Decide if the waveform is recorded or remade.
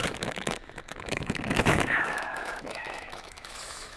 remade